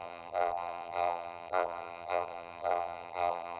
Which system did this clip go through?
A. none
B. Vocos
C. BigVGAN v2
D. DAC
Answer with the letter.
C